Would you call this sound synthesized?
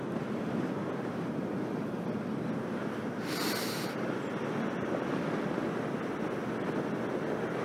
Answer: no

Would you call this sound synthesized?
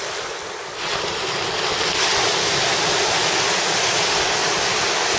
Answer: no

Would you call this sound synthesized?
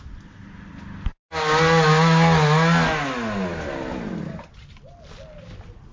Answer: no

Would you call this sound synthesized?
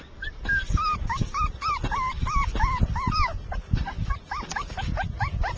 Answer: no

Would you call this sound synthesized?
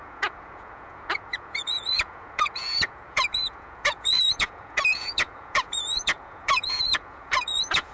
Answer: yes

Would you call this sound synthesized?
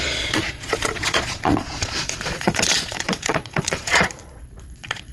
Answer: yes